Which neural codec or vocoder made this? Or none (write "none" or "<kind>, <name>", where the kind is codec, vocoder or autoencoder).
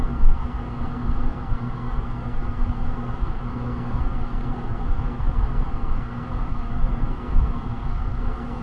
codec, SNAC